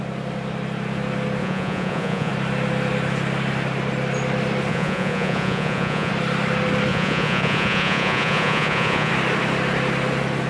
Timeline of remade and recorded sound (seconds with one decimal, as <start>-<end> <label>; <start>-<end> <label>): 0.0-1.4 recorded; 1.4-2.3 remade; 2.3-4.7 recorded; 4.7-6.1 remade; 6.1-6.9 recorded; 6.9-9.1 remade; 9.1-10.5 recorded